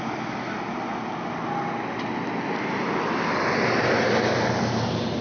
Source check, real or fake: real